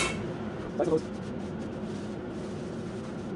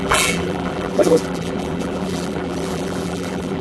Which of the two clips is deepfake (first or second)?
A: second